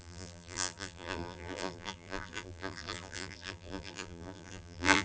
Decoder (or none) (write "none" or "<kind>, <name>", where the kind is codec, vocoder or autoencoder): vocoder, BigVGAN v2